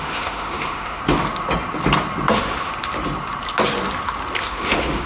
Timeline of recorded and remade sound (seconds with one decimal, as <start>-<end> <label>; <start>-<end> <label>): 0.0-1.0 remade; 1.0-2.3 recorded; 2.3-2.7 remade; 2.7-4.4 recorded; 4.4-5.1 remade